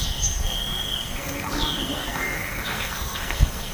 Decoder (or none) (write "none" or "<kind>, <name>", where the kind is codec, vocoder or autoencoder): codec, SNAC